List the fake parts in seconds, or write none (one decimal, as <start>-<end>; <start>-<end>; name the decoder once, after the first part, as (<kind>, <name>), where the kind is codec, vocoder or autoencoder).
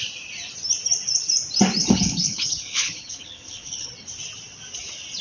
1.8-3.9 (codec, HILCodec)